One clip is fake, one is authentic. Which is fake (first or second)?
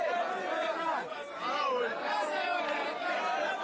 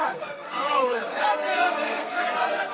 second